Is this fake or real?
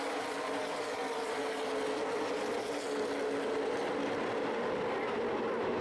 real